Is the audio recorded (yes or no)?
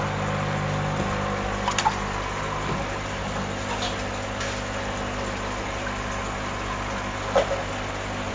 yes